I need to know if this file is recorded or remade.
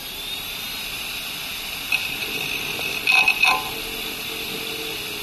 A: recorded